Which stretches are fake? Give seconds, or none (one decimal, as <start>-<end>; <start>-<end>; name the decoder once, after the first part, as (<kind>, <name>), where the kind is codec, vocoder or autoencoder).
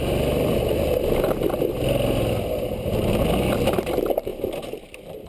none